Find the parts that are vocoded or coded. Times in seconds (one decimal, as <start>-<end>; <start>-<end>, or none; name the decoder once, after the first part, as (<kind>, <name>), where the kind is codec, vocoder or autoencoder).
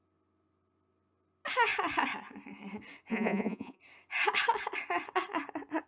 3.1-3.8 (vocoder, Vocos)